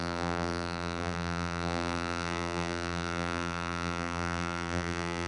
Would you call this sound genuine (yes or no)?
no